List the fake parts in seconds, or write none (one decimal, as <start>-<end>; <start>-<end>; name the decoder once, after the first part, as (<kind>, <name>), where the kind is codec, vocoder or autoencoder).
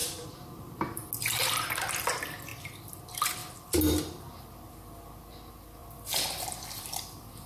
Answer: 2.5-3.0 (vocoder, BigVGAN v2); 5.8-7.5